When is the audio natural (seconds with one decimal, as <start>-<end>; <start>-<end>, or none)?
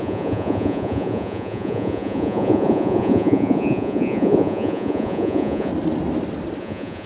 5.7-6.6